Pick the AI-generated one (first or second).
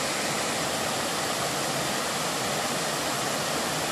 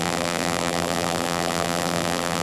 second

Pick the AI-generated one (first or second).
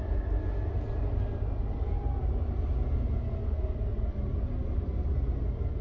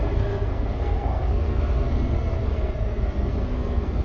second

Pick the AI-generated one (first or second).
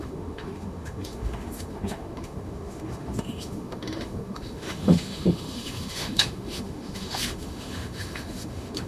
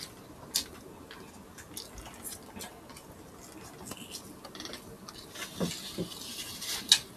first